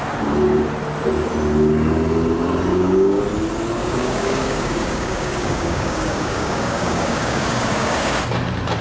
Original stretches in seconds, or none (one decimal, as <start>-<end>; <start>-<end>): 0.0-2.7; 3.2-3.8; 8.2-8.8